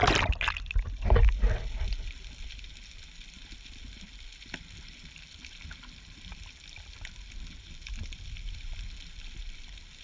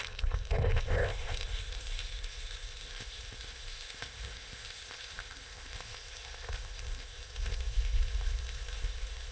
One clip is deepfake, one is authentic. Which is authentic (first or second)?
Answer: first